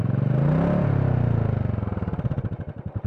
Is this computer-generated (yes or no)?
no